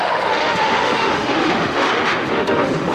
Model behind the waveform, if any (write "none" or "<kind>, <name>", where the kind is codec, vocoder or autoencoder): autoencoder, DAC-VAE